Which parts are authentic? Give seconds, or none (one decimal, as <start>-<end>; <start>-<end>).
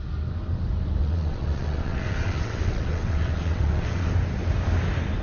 0.0-1.0; 4.1-5.2